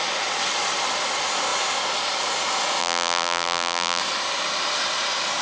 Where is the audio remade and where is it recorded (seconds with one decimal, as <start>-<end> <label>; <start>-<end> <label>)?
0.0-2.8 recorded; 2.8-4.0 remade; 4.0-5.4 recorded